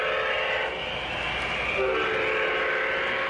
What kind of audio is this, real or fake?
real